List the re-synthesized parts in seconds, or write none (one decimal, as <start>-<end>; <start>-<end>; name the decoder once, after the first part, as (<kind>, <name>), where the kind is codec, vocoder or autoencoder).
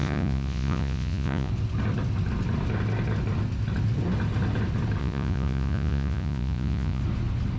0.0-1.5 (vocoder, Vocos); 5.0-7.0